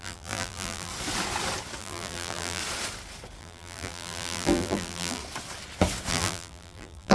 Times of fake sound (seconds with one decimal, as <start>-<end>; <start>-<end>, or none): 0.0-0.9; 1.8-2.6; 3.4-5.2; 6.1-7.1